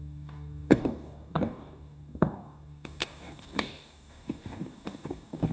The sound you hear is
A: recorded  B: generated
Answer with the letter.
B